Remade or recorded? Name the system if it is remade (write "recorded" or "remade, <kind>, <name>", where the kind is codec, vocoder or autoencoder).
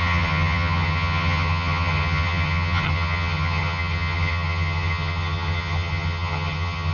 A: remade, vocoder, HiFi-GAN